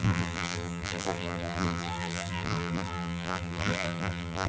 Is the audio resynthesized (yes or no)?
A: yes